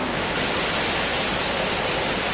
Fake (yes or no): yes